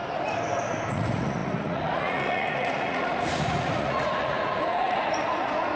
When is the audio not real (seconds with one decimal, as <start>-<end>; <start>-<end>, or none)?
0.9-5.8